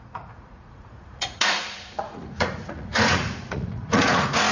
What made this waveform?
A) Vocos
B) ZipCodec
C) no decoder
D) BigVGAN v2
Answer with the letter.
A